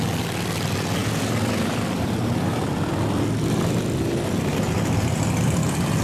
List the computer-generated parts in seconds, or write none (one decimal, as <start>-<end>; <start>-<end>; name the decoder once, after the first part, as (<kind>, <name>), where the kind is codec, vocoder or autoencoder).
none